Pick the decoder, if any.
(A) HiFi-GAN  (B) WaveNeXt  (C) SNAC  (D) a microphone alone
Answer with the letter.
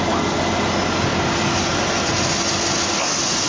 D